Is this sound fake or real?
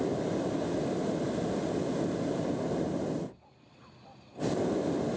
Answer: real